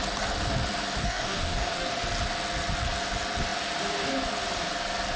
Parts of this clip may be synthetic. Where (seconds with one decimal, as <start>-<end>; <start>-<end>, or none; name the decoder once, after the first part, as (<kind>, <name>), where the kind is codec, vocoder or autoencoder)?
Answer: 1.0-1.9 (codec, DAC)